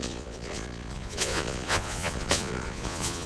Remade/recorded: remade